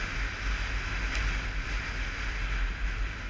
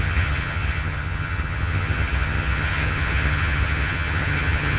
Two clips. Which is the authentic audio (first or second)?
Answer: first